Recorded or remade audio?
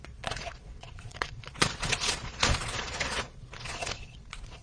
remade